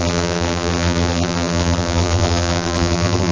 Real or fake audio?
fake